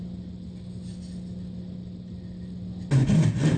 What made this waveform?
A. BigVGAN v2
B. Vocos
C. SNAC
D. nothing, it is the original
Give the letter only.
D